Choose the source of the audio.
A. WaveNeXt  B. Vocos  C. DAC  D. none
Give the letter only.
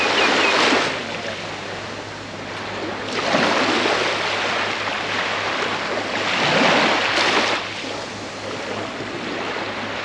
D